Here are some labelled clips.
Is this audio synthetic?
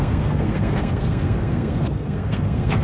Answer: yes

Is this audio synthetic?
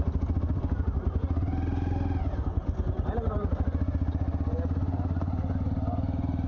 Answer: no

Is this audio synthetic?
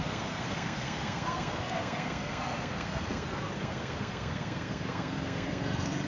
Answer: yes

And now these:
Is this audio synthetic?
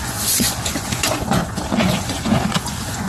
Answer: yes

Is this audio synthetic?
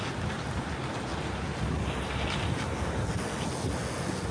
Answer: no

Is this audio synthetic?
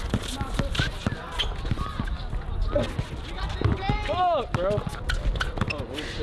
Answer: no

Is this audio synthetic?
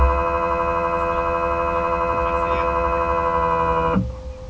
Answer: no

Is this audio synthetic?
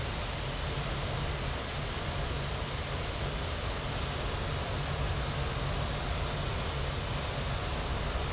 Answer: no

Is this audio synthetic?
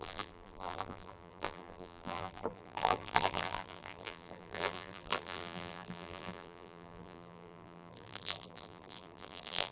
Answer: yes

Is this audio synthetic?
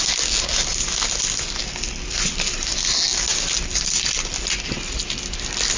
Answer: no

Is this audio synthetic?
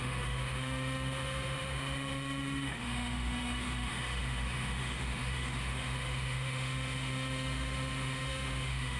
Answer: yes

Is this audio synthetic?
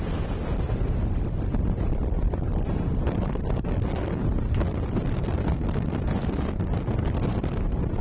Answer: no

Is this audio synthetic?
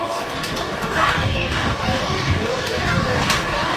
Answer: yes